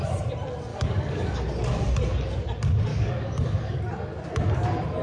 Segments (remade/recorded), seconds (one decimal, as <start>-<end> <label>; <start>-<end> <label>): 0.0-0.7 recorded; 0.7-1.4 remade; 1.4-2.9 recorded; 2.9-3.8 remade; 3.8-5.0 recorded